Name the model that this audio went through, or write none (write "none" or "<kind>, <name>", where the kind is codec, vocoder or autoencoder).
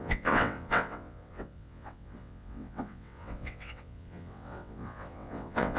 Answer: vocoder, WaveNeXt